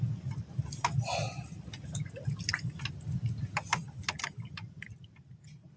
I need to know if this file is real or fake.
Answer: real